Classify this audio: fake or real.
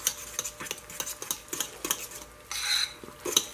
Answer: real